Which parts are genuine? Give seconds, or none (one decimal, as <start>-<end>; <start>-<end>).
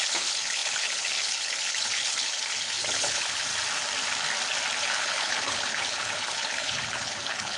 3.5-4.8